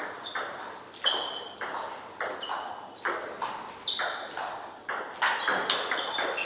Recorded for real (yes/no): yes